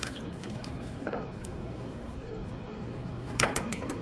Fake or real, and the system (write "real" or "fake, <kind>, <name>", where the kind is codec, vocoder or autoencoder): fake, codec, SNAC